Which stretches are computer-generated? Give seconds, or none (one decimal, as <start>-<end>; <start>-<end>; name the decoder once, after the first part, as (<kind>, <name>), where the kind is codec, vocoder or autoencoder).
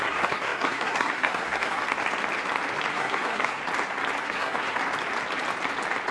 0.0-1.8 (codec, SNAC); 2.9-3.6; 4.2-4.8